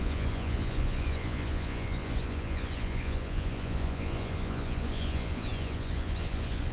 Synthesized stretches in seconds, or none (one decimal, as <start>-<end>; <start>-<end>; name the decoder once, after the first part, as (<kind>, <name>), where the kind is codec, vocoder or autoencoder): 0.0-6.7 (vocoder, Vocos)